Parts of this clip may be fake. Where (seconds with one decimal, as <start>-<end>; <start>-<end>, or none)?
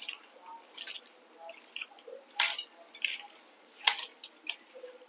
0.0-0.4; 3.5-4.1